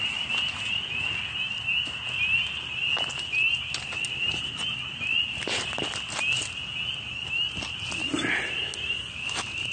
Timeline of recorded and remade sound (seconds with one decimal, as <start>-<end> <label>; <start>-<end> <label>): 0.0-9.7 recorded